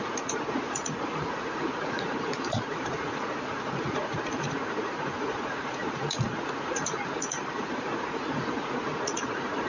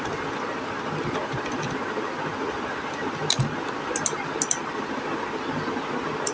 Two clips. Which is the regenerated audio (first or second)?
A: first